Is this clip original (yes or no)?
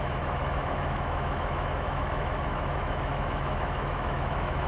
no